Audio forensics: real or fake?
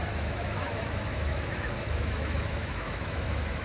fake